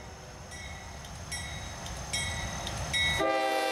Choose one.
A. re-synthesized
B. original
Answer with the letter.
B